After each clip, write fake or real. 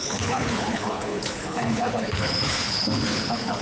fake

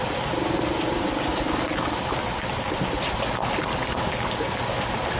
real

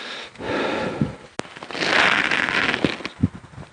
real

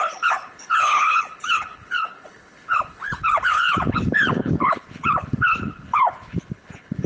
fake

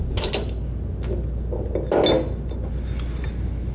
real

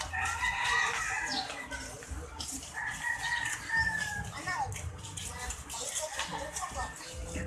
real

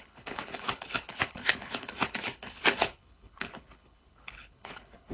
fake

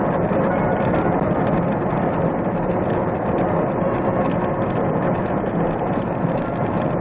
real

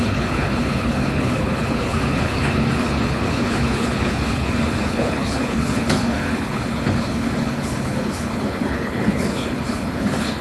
fake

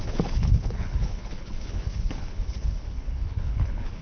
fake